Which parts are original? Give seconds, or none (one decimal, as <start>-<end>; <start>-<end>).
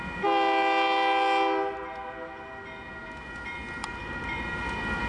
0.0-3.8; 4.3-5.1